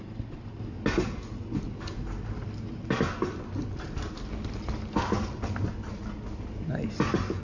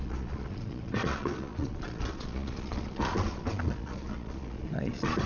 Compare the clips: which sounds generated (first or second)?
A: second